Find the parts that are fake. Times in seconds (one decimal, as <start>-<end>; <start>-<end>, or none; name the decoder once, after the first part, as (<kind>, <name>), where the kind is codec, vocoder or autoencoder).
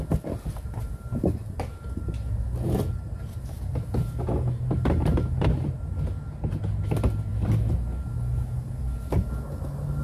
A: none